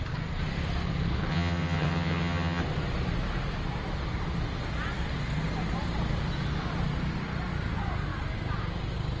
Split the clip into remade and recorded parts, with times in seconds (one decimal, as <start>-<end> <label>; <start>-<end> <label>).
0.0-1.3 recorded; 1.3-2.6 remade; 2.6-9.2 recorded